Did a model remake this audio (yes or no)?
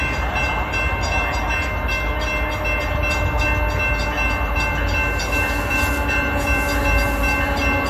no